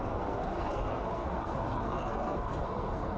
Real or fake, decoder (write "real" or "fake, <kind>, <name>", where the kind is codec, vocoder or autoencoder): fake, codec, SNAC